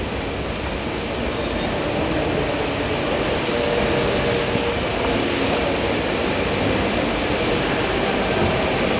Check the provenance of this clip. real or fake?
real